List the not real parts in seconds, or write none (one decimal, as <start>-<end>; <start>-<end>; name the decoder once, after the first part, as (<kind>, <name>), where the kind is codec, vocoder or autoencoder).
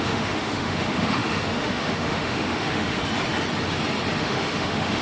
0.0-3.0 (autoencoder, DAC-VAE); 4.2-5.0